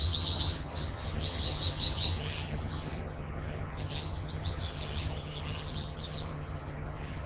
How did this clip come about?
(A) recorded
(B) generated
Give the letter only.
B